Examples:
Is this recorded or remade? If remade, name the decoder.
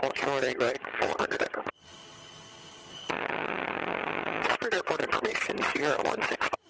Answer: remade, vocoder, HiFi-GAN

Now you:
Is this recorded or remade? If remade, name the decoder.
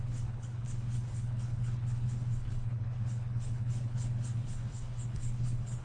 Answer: remade, codec, HILCodec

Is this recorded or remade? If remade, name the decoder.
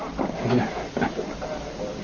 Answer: recorded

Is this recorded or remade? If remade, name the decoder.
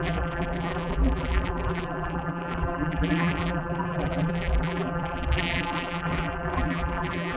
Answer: remade, vocoder, BigVGAN v2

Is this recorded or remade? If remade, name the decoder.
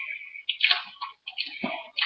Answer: recorded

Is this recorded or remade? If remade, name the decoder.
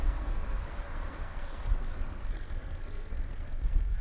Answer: remade, codec, SNAC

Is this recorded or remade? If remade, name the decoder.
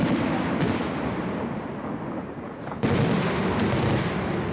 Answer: recorded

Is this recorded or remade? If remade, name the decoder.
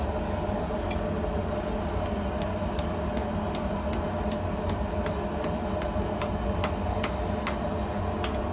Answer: recorded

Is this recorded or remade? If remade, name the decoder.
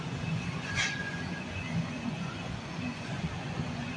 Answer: remade, vocoder, Vocos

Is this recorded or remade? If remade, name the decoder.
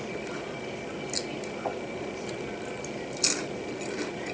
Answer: recorded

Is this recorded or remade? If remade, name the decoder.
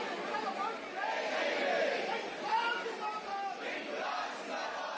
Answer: recorded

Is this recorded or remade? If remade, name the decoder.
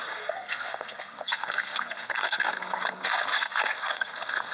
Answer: remade, codec, SNAC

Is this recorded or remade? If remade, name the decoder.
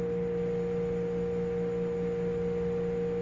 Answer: recorded